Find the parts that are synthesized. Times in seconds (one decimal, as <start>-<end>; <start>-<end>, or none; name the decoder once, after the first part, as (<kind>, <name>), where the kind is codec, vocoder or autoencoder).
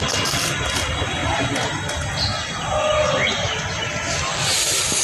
none